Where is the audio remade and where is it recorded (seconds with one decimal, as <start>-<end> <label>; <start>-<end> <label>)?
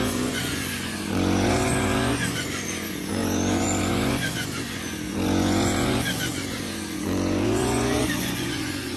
0.0-9.0 remade